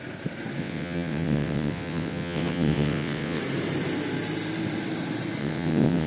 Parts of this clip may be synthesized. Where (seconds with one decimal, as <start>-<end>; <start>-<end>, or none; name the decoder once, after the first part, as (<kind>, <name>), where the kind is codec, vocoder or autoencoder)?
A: 0.6-3.4 (vocoder, WaveNeXt); 5.4-6.1